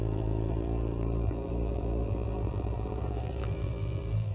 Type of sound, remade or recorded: remade